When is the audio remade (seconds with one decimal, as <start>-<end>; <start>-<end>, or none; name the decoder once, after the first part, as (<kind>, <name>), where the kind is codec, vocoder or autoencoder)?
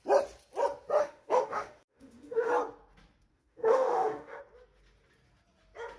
1.0-2.5 (autoencoder, DAC-VAE); 3.3-4.4